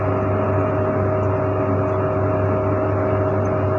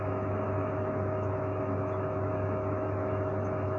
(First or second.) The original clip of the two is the first